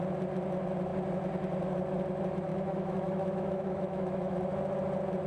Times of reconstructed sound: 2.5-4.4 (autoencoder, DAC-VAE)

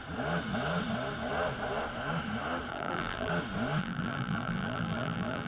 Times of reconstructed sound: 2.7-3.3 (vocoder, BigVGAN v2); 3.8-5.5

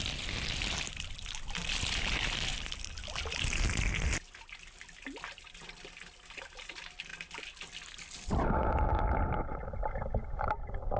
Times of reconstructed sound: none

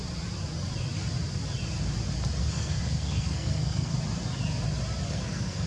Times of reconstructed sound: 2.4-3.9 (codec, SNAC); 5.1-5.7

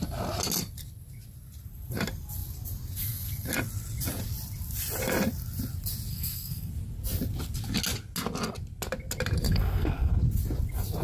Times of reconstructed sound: 6.1-6.7 (codec, SNAC); 9.5-10.1

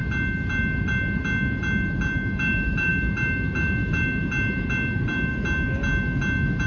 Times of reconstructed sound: none